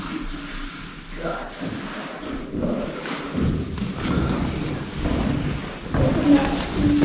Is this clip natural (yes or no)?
yes